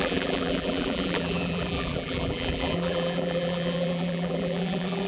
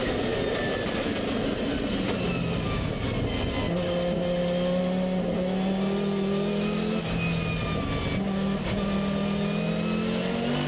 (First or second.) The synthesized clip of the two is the first